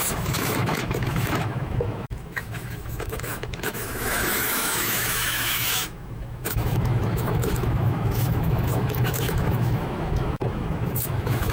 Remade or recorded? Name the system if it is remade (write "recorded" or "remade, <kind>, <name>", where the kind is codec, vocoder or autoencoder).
remade, autoencoder, DAC-VAE